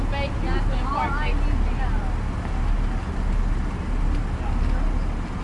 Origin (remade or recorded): recorded